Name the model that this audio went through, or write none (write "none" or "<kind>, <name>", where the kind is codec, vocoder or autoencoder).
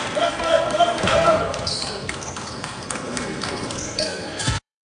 codec, SNAC